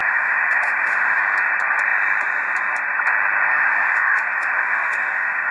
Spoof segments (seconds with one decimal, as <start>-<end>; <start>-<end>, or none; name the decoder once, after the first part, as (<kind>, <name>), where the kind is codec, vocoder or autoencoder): 0.0-1.2 (autoencoder, DAC-VAE); 3.5-5.5

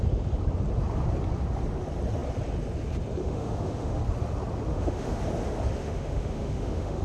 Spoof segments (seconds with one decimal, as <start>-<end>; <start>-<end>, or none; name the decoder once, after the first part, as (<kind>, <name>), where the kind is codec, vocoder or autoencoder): 3.2-4.0 (autoencoder, DAC-VAE); 4.7-5.2; 5.8-7.0

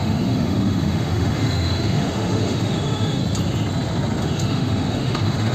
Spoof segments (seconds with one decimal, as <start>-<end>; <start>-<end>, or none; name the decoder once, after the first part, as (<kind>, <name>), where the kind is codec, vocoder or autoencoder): 0.0-3.2 (autoencoder, DAC-VAE); 4.2-5.5

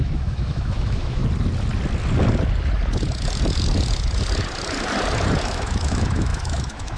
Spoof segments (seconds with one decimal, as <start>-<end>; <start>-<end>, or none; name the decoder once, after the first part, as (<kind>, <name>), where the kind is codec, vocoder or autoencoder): 0.0-1.2 (autoencoder, DAC-VAE); 5.4-7.0

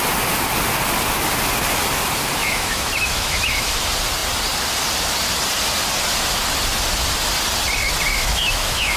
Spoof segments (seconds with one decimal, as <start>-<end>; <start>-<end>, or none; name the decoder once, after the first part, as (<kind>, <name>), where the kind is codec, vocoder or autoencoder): 2.4-3.8 (autoencoder, DAC-VAE); 8.1-9.0